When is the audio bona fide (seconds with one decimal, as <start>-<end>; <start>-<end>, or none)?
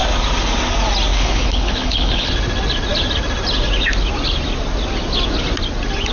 0.0-1.1; 2.3-6.1